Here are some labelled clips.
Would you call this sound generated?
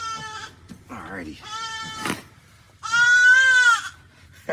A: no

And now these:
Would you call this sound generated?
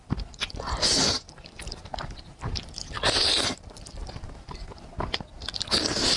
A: no